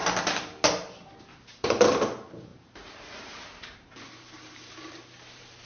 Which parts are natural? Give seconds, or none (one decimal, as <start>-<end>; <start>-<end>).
0.0-1.2